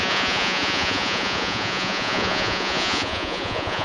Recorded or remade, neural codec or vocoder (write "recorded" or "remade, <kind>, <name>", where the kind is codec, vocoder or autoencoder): remade, vocoder, Vocos